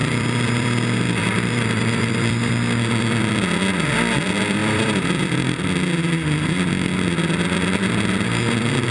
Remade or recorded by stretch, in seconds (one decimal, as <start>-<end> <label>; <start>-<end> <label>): 0.0-2.5 remade; 2.5-4.6 recorded; 4.6-5.6 remade; 5.6-8.9 recorded